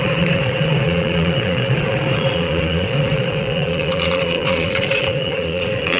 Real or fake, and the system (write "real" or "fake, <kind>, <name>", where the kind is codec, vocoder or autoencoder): fake, vocoder, Vocos